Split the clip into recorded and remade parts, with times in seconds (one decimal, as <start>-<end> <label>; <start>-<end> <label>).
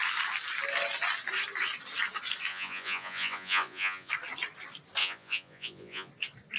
0.0-2.5 recorded; 2.5-4.1 remade; 4.1-5.0 recorded; 5.0-6.1 remade; 6.1-6.6 recorded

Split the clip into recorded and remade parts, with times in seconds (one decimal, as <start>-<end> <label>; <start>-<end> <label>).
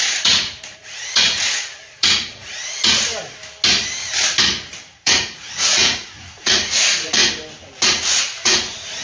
0.0-3.1 remade; 3.1-4.8 recorded; 4.8-7.2 remade; 7.2-8.2 recorded; 8.2-9.0 remade